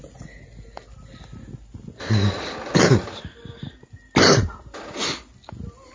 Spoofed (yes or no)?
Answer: no